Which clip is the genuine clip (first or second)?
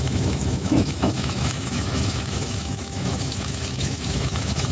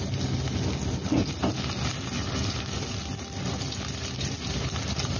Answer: second